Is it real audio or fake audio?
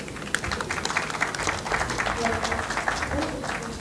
real